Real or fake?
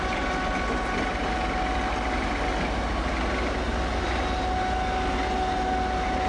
real